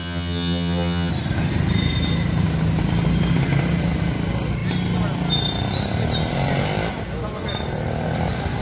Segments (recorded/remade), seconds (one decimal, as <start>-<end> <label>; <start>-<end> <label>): 0.0-1.1 remade; 1.1-8.6 recorded